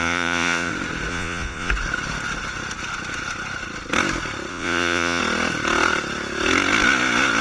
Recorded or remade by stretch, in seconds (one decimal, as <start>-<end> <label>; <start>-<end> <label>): 0.0-0.7 remade; 0.7-1.1 recorded; 1.1-1.7 remade; 1.7-4.5 recorded; 4.5-5.2 remade; 5.2-7.4 recorded